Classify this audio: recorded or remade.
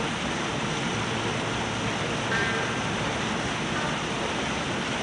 remade